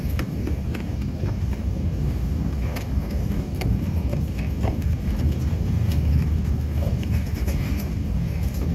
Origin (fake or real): fake